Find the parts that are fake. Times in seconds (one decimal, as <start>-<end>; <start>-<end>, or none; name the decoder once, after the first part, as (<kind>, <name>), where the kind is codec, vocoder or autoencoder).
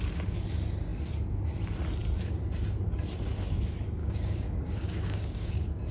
4.0-5.5 (codec, DAC)